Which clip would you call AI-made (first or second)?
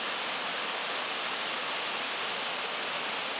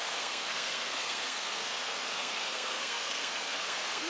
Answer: second